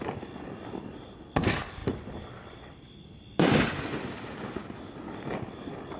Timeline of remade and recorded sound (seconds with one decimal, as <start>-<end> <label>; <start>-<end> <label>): 0.0-6.0 recorded

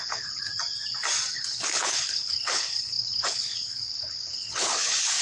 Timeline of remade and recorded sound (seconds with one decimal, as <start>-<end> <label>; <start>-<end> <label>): 0.0-0.5 remade; 0.5-1.3 recorded; 1.3-5.2 remade

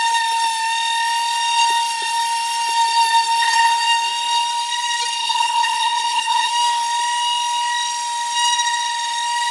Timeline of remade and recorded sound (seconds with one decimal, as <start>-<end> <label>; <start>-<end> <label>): 0.0-5.2 recorded; 5.2-6.5 remade; 6.5-9.5 recorded

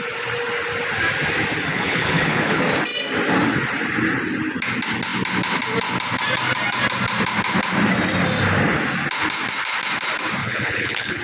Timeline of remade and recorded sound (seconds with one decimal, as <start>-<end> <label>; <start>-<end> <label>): 0.0-1.7 recorded; 1.7-2.6 remade; 2.6-10.4 recorded; 10.4-11.2 remade